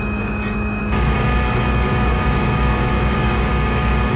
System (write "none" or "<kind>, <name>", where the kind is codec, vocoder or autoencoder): codec, DAC